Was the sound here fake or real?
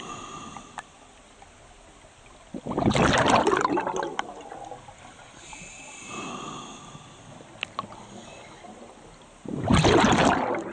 real